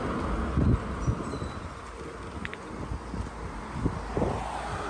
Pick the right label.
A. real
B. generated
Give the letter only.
A